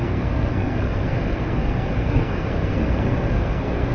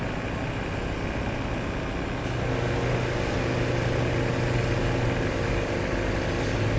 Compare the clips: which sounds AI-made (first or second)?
first